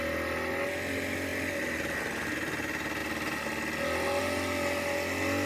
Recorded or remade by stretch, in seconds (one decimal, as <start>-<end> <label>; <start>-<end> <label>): 0.0-5.5 recorded